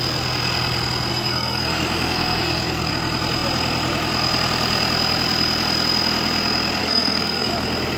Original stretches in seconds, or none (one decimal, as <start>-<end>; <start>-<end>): 0.0-1.1; 2.9-6.8; 7.5-8.0

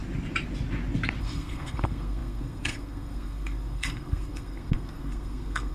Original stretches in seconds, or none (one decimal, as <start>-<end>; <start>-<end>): 0.0-1.2

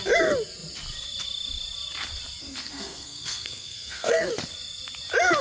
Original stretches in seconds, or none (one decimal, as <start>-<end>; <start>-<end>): 0.0-2.4; 4.3-5.4

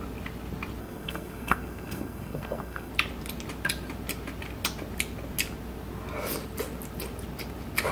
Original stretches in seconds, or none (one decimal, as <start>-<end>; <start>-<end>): 0.0-0.8; 2.9-7.9

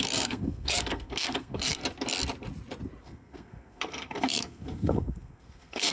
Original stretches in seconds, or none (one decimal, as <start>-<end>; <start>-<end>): 1.8-3.0

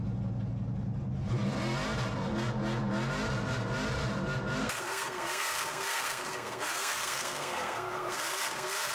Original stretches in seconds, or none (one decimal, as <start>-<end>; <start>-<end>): 0.0-4.6

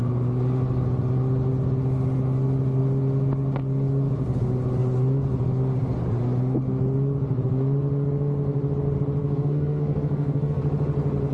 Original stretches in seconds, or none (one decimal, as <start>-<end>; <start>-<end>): 0.0-9.2; 10.6-11.3